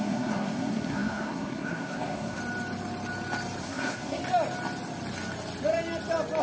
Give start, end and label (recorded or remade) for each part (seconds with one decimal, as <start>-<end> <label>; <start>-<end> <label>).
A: 0.0-2.4 remade; 2.4-3.6 recorded; 3.6-4.2 remade; 4.2-6.4 recorded